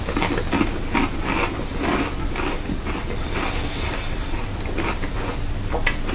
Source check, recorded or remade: recorded